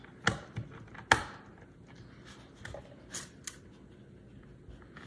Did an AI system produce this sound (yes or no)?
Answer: no